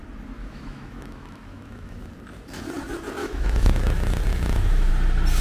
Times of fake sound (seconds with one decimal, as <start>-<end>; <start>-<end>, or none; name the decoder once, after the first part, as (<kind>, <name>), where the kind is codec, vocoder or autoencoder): 0.4-2.1 (autoencoder, DAC-VAE); 3.2-3.8; 4.3-4.9